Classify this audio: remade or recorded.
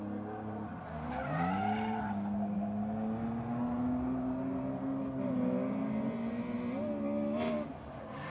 recorded